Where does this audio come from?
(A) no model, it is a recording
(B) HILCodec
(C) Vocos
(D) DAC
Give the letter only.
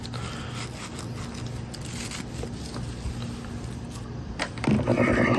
A